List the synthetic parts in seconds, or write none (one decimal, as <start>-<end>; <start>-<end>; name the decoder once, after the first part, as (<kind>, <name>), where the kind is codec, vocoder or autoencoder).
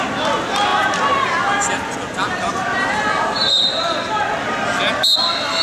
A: none